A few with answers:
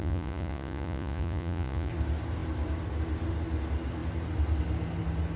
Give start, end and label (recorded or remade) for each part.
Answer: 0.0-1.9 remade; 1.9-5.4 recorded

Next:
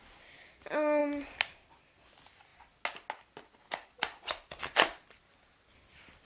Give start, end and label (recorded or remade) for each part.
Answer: 0.0-6.3 recorded

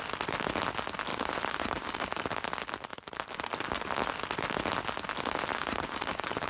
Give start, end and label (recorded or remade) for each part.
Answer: 0.0-1.1 recorded; 1.1-2.2 remade; 2.2-2.9 recorded; 2.9-3.4 remade; 3.4-5.5 recorded; 5.5-6.5 remade

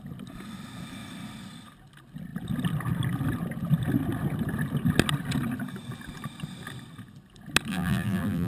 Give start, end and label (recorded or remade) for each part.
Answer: 0.0-7.7 recorded; 7.7-8.5 remade